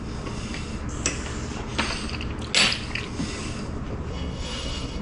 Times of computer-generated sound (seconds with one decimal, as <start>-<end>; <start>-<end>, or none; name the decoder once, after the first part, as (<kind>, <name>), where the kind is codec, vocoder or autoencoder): 4.1-5.0 (codec, SNAC)